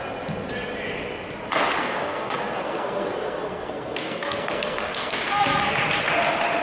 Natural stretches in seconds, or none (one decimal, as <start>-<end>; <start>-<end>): 0.0-1.8; 5.8-6.6